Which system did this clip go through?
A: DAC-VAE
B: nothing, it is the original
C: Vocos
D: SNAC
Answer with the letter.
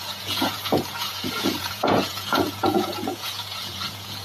C